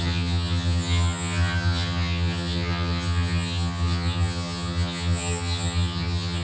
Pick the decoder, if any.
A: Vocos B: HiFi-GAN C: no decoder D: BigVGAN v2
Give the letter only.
B